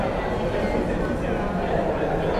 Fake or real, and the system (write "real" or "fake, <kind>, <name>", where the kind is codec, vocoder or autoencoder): real